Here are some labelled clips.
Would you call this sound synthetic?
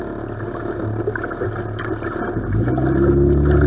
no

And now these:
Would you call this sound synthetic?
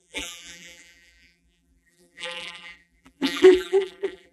yes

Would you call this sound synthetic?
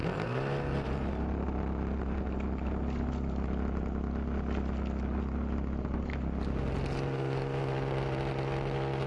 no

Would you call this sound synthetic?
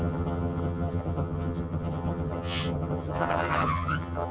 yes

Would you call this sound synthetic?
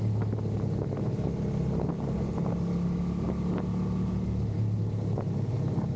no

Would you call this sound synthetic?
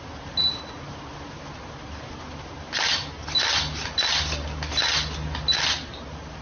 no